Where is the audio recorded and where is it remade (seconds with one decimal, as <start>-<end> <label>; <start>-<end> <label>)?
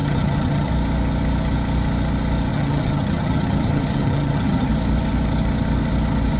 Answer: 0.0-0.7 remade; 0.7-2.5 recorded; 2.5-4.7 remade; 4.7-6.4 recorded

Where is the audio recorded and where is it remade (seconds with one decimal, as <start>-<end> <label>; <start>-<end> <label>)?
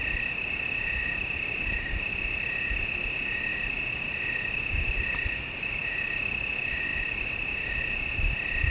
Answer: 0.0-8.7 recorded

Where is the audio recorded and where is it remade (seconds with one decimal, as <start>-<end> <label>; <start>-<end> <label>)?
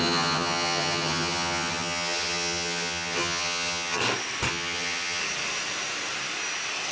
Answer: 0.0-4.0 remade; 4.0-4.5 recorded; 4.5-5.2 remade; 5.2-6.9 recorded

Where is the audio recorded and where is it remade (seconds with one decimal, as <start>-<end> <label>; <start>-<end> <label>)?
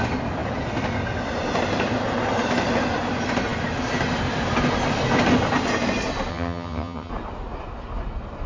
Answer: 0.0-6.3 recorded; 6.3-7.1 remade; 7.1-8.5 recorded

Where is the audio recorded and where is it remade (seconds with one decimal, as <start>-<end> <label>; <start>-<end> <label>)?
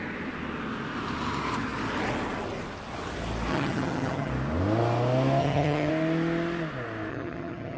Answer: 0.0-3.5 recorded; 3.5-4.3 remade; 4.3-5.4 recorded; 5.4-5.9 remade; 5.9-7.1 recorded; 7.1-7.8 remade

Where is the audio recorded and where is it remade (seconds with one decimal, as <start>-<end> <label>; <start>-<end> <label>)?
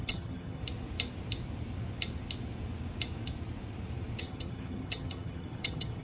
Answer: 0.0-0.6 remade; 0.6-4.2 recorded; 4.2-6.0 remade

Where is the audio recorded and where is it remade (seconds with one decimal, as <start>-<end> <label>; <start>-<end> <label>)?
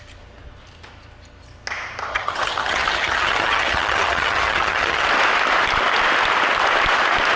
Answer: 0.0-2.1 recorded; 2.1-5.1 remade; 5.1-7.4 recorded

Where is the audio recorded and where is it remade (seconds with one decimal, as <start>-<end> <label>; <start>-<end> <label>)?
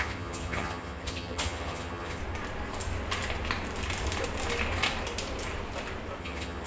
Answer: 0.0-2.2 remade; 2.2-6.2 recorded; 6.2-6.7 remade